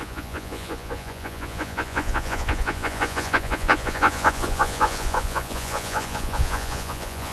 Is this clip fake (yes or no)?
yes